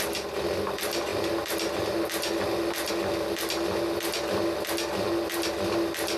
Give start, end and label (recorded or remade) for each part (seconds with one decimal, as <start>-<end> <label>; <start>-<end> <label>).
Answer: 0.0-6.2 recorded

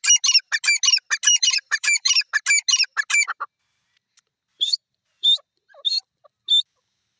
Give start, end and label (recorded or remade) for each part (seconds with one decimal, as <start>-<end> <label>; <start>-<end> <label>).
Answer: 0.0-1.3 recorded; 1.3-2.3 remade; 2.3-4.5 recorded; 4.5-5.8 remade; 5.8-7.2 recorded

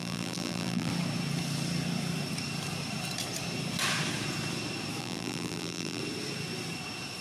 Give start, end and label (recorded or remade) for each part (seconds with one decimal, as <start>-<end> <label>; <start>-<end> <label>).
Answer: 0.0-0.9 remade; 0.9-5.0 recorded; 5.0-6.0 remade; 6.0-7.2 recorded

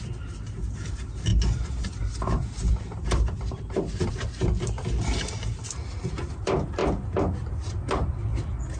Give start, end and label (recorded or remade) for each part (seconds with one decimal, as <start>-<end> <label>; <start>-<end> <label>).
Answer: 0.0-6.8 remade; 6.8-7.7 recorded; 7.7-8.3 remade; 8.3-8.8 recorded

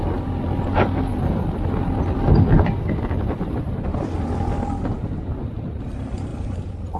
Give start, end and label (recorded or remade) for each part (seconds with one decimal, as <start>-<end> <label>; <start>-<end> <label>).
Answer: 0.0-1.1 recorded; 1.1-4.8 remade; 4.8-6.3 recorded; 6.3-7.0 remade